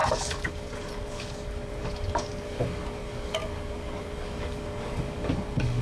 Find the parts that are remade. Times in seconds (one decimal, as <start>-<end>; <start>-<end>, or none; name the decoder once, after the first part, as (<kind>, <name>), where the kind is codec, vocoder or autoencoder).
0.0-5.8 (codec, DAC)